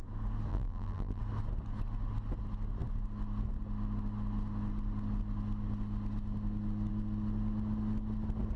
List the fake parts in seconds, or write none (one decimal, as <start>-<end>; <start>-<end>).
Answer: 0.5-1.2